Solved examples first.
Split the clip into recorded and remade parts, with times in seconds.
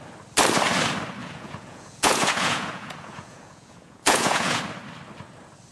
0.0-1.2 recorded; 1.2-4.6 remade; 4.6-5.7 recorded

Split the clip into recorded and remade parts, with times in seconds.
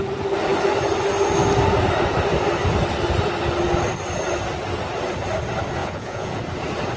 0.0-5.8 recorded; 5.8-6.4 remade; 6.4-7.0 recorded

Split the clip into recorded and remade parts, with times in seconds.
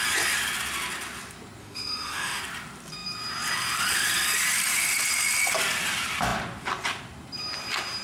0.0-1.6 recorded; 1.6-2.4 remade; 2.4-8.0 recorded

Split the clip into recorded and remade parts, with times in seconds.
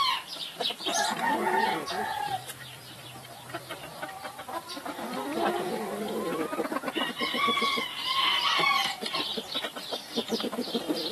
0.0-6.3 remade; 6.3-7.1 recorded; 7.1-11.1 remade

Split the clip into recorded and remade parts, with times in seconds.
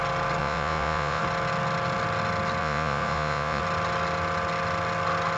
0.0-0.4 recorded; 0.4-1.2 remade; 1.2-2.6 recorded; 2.6-3.6 remade; 3.6-5.4 recorded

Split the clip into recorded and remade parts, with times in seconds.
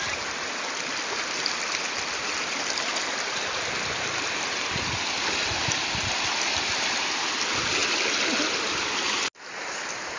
0.0-10.2 recorded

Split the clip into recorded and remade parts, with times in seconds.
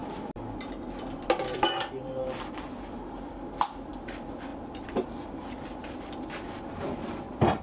0.0-7.6 recorded